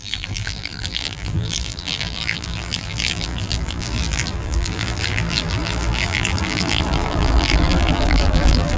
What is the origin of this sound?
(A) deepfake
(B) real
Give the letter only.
A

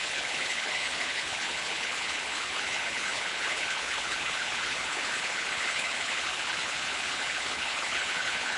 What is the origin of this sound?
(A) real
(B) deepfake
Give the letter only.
B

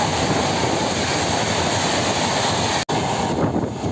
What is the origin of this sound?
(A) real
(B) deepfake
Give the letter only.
A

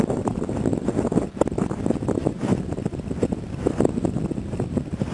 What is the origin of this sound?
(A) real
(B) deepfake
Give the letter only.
A